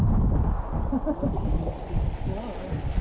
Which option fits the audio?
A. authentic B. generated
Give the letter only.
A